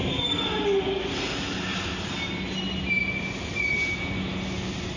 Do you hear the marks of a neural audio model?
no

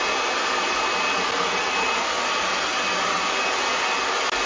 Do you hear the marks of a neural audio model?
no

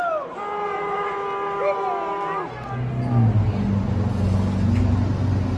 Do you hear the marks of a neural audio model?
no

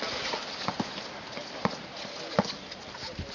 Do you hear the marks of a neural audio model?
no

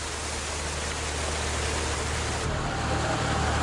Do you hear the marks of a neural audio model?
no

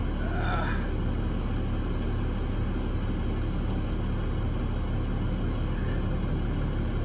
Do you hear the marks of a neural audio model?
no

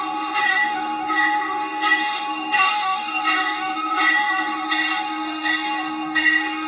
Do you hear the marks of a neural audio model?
yes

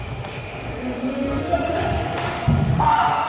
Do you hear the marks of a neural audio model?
yes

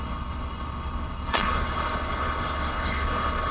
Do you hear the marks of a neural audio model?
yes